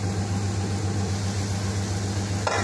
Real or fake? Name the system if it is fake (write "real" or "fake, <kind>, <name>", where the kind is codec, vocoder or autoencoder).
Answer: real